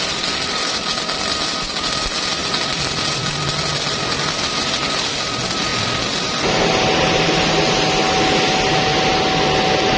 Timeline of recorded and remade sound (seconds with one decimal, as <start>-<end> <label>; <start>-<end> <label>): 0.0-10.0 recorded